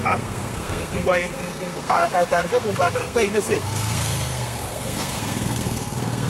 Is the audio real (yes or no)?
no